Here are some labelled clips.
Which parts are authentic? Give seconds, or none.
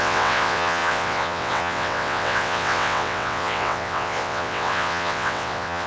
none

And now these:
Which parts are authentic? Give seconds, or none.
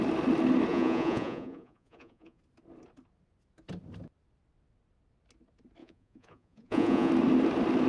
0.0-0.7; 2.4-5.8; 7.1-7.9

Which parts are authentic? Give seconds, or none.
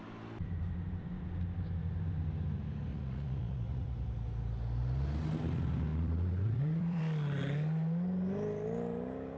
0.0-2.9; 3.9-5.9; 7.0-9.4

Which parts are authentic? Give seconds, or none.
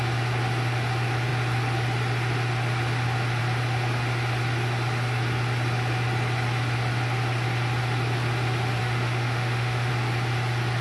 0.0-8.8; 9.9-10.8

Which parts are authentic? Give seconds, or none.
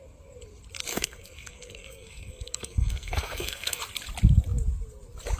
0.0-0.9; 3.8-5.4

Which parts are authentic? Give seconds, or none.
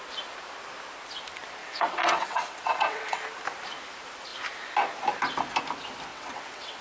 0.0-1.6; 3.2-6.1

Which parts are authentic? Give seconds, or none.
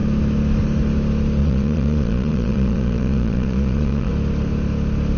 0.0-1.4; 4.1-5.2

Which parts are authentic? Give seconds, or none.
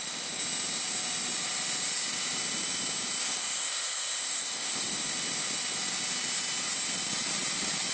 0.0-3.2; 5.0-7.9